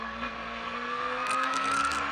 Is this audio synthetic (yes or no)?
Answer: yes